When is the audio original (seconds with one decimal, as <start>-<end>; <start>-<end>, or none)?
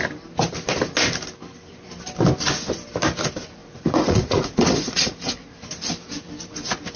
0.0-3.6; 5.6-7.0